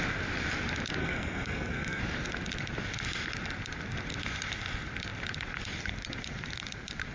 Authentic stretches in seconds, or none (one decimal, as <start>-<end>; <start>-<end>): 0.0-1.0; 2.0-7.1